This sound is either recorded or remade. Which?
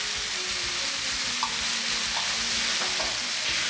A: recorded